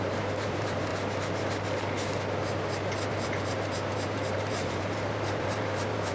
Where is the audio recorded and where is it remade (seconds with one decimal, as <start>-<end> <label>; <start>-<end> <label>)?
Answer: 0.0-0.9 remade; 0.9-3.1 recorded; 3.1-6.1 remade